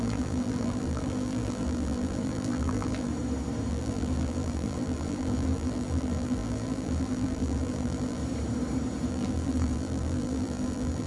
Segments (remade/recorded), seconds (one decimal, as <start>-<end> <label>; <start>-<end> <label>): 0.0-3.1 remade; 3.1-3.7 recorded; 3.7-8.2 remade; 8.2-9.1 recorded; 9.1-11.1 remade